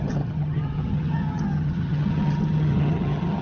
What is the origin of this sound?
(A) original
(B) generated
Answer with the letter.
B